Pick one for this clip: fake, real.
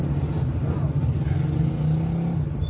real